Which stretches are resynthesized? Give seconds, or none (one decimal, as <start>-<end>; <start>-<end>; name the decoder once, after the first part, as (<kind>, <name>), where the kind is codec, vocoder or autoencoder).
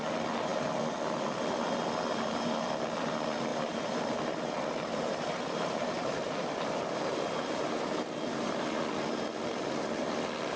3.5-8.6 (vocoder, BigVGAN v2)